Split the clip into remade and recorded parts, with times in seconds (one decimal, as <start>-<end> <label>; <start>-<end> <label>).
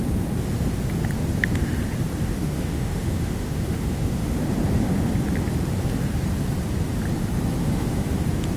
0.0-2.4 recorded; 2.4-4.4 remade; 4.4-7.6 recorded; 7.6-8.2 remade; 8.2-8.6 recorded